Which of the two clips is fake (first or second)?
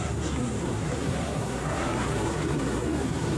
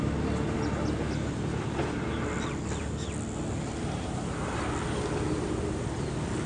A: first